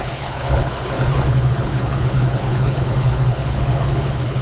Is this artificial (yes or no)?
yes